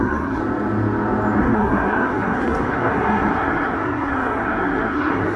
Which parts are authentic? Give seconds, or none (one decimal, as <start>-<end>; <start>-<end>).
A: 0.4-1.4